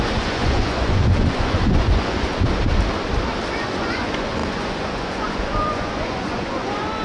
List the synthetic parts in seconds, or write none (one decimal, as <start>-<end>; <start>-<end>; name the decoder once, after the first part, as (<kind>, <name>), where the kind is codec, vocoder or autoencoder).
0.0-2.3 (vocoder, Vocos); 3.6-7.0